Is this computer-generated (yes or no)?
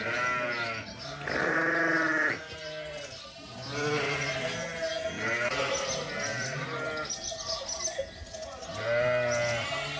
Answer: no